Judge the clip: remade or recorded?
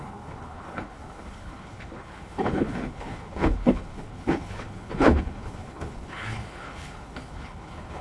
remade